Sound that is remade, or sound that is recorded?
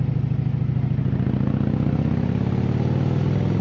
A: recorded